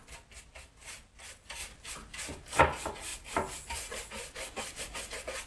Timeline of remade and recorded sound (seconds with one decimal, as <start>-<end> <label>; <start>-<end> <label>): 0.0-5.5 recorded